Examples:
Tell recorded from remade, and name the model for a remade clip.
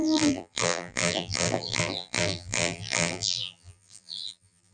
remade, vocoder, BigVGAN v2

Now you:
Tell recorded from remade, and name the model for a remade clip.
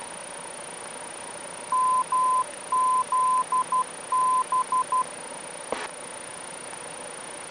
recorded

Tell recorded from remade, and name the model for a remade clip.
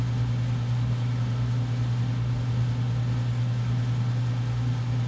recorded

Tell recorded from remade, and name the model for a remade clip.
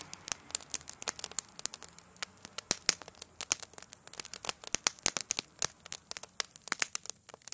recorded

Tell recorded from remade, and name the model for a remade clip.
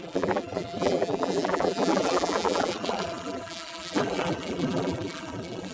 remade, vocoder, BigVGAN v2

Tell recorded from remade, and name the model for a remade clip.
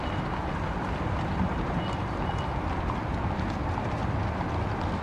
recorded